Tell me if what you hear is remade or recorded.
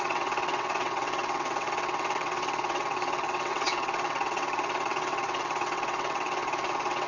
remade